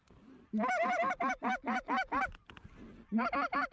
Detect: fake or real real